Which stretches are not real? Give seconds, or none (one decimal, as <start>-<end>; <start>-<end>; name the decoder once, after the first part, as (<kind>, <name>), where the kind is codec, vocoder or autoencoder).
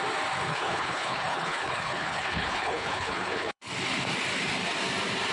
0.5-3.7 (codec, HILCodec)